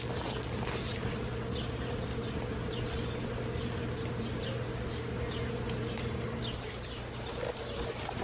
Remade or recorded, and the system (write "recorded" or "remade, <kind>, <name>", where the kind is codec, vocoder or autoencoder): recorded